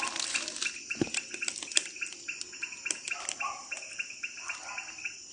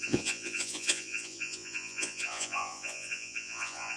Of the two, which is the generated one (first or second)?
second